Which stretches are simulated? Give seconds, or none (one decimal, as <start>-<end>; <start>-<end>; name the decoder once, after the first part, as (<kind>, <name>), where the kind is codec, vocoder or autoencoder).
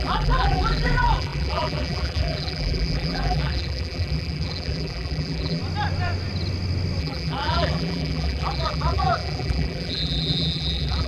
0.0-5.6 (vocoder, BigVGAN v2); 7.0-11.1